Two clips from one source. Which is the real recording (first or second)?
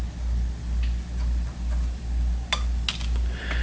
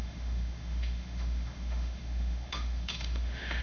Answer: first